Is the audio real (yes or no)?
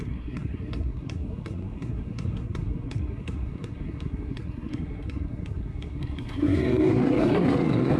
no